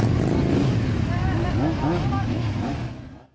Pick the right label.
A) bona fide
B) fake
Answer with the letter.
A